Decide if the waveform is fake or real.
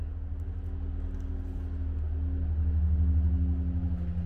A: real